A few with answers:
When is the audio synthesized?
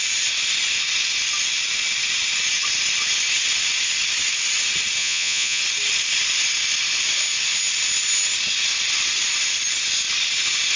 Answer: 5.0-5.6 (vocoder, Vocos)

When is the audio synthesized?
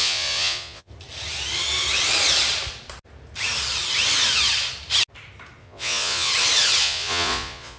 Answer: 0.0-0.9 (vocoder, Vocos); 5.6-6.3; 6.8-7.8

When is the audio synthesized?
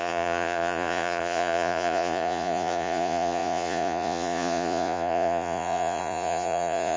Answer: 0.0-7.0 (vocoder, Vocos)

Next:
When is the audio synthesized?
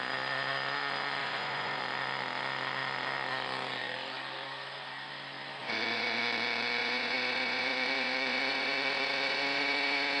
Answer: 1.2-1.8 (vocoder, Vocos); 5.6-6.2; 6.8-10.2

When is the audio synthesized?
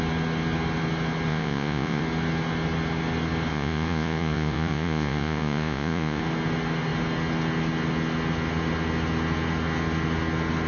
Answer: 1.3-2.0 (vocoder, Vocos); 3.5-6.2